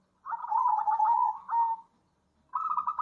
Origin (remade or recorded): recorded